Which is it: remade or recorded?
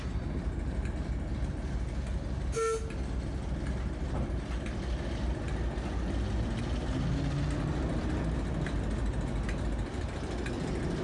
recorded